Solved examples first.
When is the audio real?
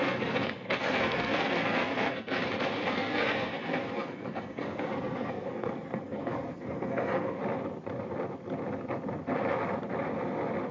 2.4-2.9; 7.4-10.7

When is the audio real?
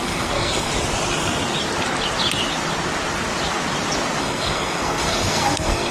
0.7-4.2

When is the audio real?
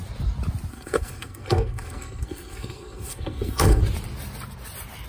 0.0-0.7; 3.8-5.1